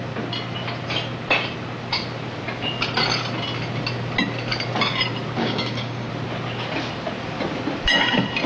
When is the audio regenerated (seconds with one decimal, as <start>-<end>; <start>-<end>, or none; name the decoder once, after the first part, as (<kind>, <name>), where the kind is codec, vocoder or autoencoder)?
5.4-6.1 (codec, DAC)